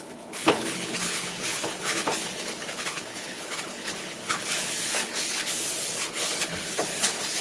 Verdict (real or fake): fake